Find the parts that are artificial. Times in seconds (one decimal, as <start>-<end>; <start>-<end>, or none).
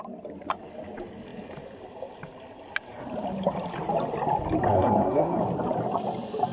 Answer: 4.7-5.4